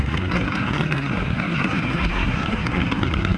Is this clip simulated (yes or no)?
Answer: yes